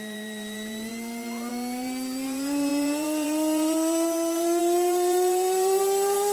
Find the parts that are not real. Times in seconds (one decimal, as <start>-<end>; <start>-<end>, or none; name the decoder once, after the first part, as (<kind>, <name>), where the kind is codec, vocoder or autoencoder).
0.0-6.3 (vocoder, BigVGAN v2)